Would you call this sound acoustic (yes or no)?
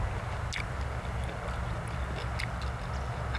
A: yes